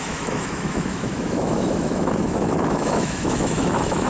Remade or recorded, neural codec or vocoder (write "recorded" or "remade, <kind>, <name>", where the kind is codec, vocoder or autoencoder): remade, autoencoder, DAC-VAE